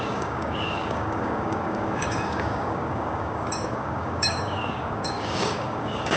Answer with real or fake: fake